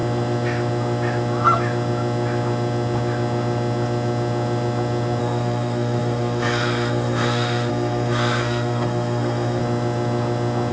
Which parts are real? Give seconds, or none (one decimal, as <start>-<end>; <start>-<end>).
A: 0.0-5.2; 9.6-10.7